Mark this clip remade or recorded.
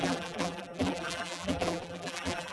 remade